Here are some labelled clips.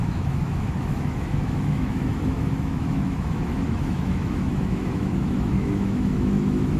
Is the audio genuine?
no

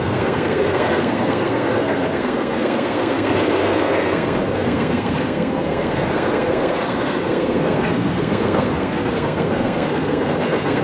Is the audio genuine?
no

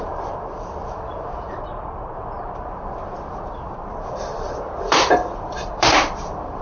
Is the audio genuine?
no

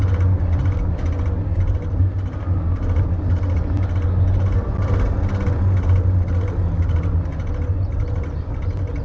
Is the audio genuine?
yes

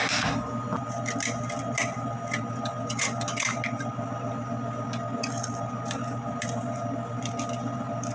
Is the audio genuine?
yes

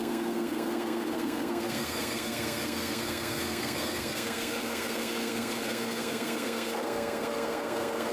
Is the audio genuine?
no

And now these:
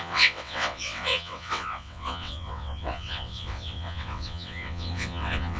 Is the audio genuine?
no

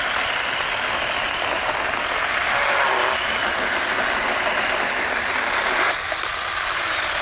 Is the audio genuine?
yes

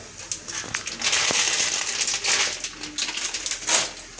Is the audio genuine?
yes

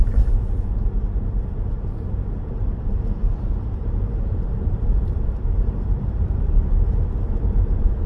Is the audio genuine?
no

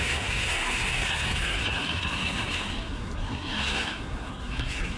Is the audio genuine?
no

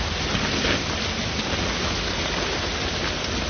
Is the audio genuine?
yes